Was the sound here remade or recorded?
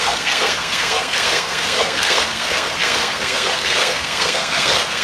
remade